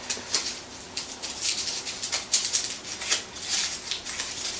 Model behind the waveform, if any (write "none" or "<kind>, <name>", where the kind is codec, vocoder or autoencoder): none